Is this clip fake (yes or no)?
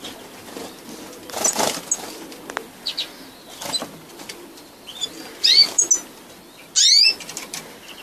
no